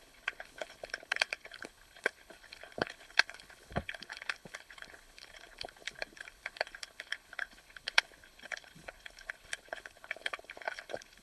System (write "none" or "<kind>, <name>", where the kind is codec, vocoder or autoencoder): codec, HILCodec